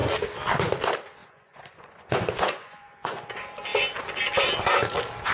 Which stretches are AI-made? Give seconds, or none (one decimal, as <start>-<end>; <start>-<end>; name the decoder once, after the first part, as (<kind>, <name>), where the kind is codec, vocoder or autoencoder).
1.2-3.2 (vocoder, Vocos)